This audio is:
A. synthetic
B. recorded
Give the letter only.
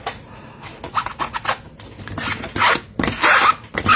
B